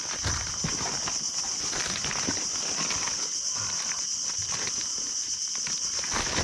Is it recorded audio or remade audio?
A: recorded